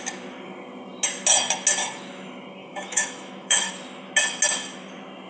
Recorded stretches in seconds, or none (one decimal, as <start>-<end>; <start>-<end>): 0.0-2.6; 3.7-5.3

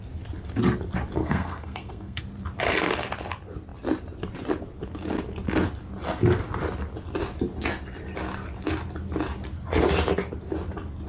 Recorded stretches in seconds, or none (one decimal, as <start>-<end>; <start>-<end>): 0.0-1.2; 2.2-11.1

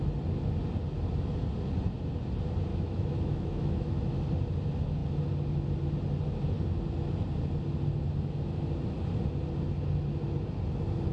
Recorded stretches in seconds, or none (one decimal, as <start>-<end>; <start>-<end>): 0.0-2.7; 4.3-11.1

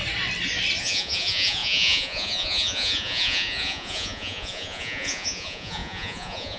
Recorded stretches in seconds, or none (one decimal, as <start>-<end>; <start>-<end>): 0.0-0.8

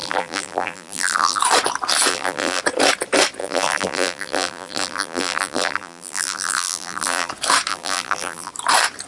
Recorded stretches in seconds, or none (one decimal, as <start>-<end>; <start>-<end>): 1.4-2.1; 2.6-3.4; 7.3-7.7; 8.5-9.1

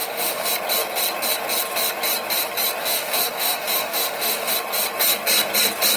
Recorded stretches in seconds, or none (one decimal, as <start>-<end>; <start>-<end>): 0.5-2.8; 4.5-6.0

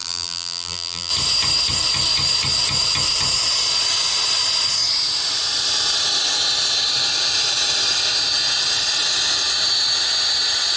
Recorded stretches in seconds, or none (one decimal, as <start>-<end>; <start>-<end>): 1.1-10.8